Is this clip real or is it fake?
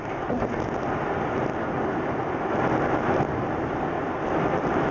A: real